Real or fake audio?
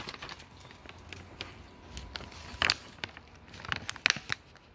real